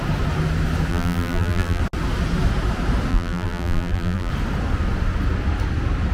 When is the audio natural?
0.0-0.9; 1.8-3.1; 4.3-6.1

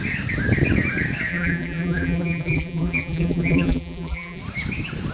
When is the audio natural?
0.0-1.3; 4.4-5.1

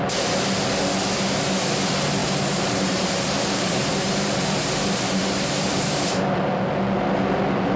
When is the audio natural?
0.0-2.2; 6.2-7.8

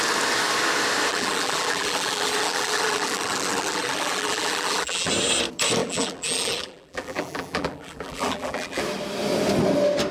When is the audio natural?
0.0-1.1; 5.1-5.8; 8.8-10.1

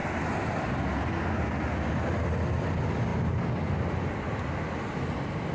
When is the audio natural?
0.0-5.5

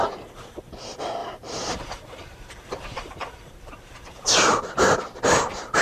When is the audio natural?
0.0-1.2; 4.7-5.8

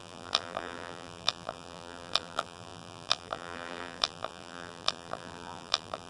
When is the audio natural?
none

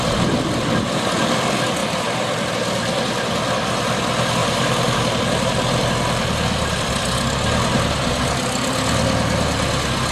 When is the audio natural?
0.0-1.8; 2.5-4.4; 5.2-10.1